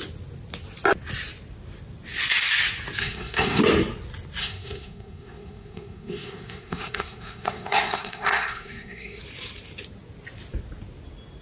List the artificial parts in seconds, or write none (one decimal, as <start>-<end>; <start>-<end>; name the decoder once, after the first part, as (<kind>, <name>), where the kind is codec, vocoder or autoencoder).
3.0-3.6 (codec, SNAC); 4.4-9.2